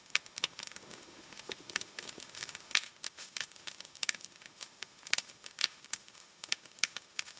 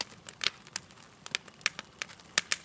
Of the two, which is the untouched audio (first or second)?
second